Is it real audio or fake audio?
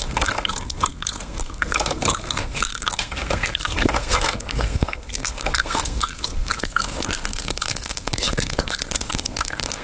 fake